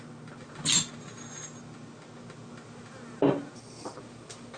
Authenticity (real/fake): real